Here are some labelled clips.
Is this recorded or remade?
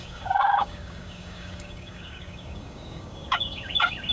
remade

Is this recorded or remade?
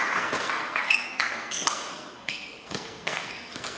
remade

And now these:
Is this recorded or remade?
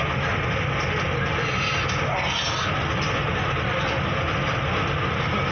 recorded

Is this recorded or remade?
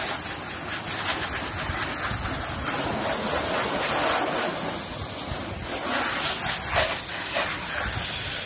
recorded